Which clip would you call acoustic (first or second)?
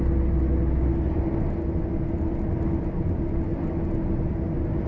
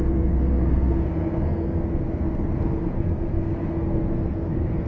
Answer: first